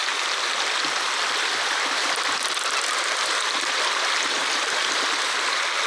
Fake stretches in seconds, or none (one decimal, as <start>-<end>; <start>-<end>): 0.0-3.5; 4.4-4.9